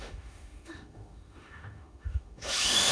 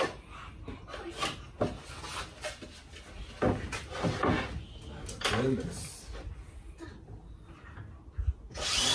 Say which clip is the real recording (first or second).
second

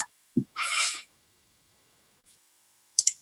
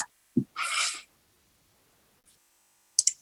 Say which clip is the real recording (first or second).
second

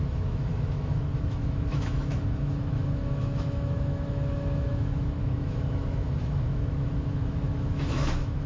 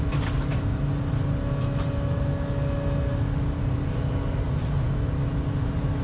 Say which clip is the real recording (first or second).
second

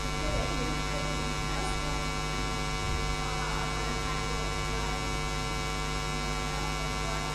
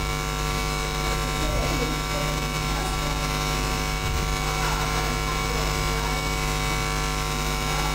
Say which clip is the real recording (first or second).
first